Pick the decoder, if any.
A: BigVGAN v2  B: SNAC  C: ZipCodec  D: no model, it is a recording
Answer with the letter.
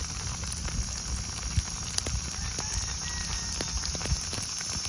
D